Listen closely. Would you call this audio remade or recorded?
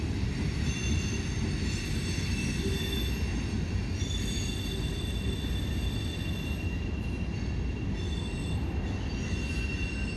recorded